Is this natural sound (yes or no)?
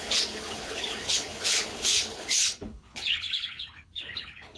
no